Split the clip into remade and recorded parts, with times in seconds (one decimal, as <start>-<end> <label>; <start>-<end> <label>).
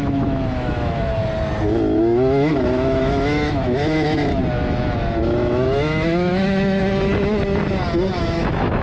0.0-1.1 remade; 1.1-2.0 recorded; 2.0-4.4 remade; 4.4-5.2 recorded; 5.2-6.8 remade; 6.8-8.2 recorded; 8.2-8.8 remade